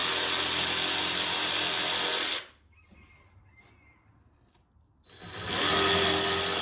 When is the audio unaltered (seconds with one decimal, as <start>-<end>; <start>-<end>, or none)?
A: 0.0-6.6